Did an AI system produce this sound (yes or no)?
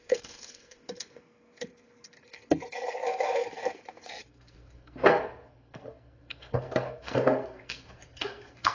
yes